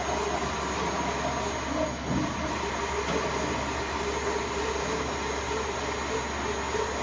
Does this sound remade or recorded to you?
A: recorded